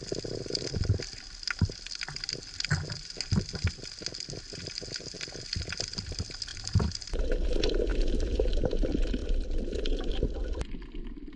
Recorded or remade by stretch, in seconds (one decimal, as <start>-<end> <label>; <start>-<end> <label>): 0.0-6.5 recorded; 6.5-7.2 remade; 7.2-7.9 recorded; 7.9-8.6 remade; 8.6-9.2 recorded; 9.2-10.1 remade; 10.1-11.4 recorded